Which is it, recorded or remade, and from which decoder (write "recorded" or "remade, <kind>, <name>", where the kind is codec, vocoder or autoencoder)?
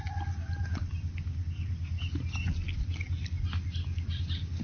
recorded